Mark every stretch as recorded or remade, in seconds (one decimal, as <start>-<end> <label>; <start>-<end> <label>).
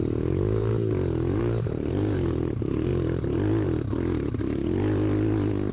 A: 0.0-0.7 remade; 0.7-1.4 recorded; 1.4-2.9 remade; 2.9-5.7 recorded